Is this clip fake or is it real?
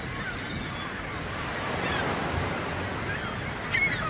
real